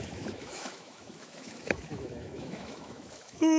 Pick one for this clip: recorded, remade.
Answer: remade